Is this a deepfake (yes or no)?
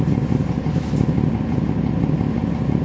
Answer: no